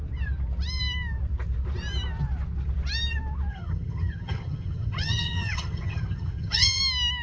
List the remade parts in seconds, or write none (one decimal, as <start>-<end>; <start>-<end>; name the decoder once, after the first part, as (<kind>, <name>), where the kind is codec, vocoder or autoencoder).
3.5-6.8 (vocoder, HiFi-GAN)